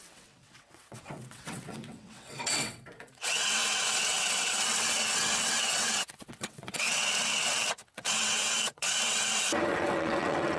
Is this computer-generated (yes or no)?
yes